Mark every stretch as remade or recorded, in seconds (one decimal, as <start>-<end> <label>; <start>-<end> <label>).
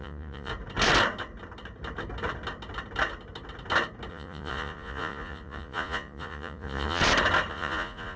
0.0-0.5 remade; 0.5-4.1 recorded; 4.1-7.0 remade; 7.0-7.5 recorded; 7.5-8.2 remade